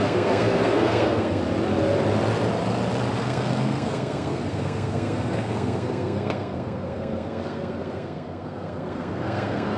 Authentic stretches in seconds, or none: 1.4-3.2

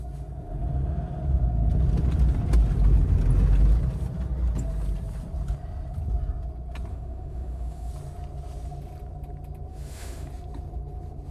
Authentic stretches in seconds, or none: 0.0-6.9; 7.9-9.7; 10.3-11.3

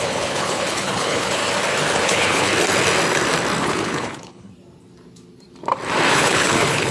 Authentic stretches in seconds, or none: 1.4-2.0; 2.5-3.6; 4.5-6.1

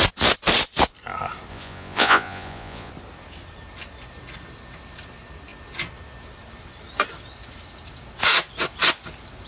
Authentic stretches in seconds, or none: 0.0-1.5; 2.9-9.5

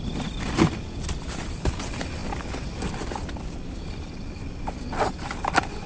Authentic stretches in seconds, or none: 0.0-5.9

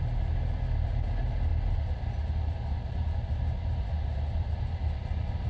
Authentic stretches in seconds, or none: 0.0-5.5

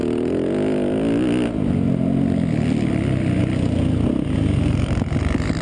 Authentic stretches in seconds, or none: 0.0-5.6